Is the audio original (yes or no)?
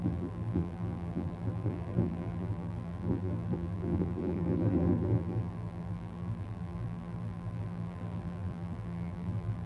no